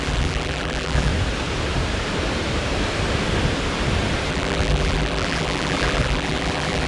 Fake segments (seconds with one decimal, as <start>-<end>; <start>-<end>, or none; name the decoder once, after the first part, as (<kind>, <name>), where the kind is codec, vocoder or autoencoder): 0.0-1.1 (vocoder, BigVGAN v2); 4.3-6.9